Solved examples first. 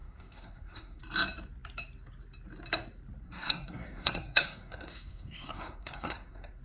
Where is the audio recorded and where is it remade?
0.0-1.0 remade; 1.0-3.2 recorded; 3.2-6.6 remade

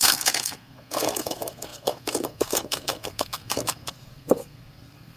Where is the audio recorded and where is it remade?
0.0-5.2 remade

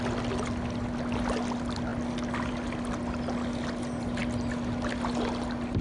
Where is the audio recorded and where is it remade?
0.0-5.8 recorded

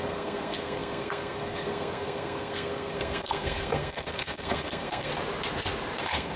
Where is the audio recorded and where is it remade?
0.0-5.1 remade; 5.1-6.0 recorded; 6.0-6.4 remade

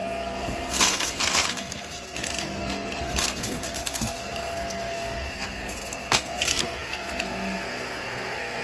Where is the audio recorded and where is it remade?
0.0-8.6 remade

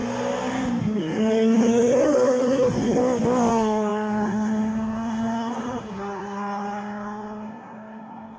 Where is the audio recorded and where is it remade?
0.0-0.8 recorded; 0.8-3.0 remade; 3.0-3.5 recorded; 3.5-8.4 remade

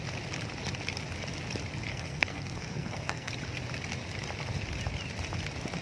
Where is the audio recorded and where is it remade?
0.0-1.9 recorded; 1.9-3.3 remade; 3.3-5.8 recorded